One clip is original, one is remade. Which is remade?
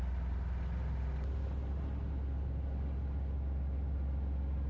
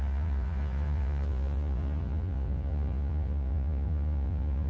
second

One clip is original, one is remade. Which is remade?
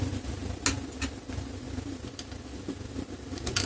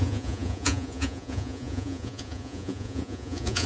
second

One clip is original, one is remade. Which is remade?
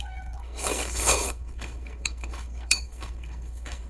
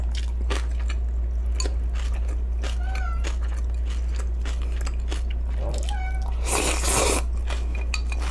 first